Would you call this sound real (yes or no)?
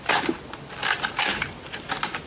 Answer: yes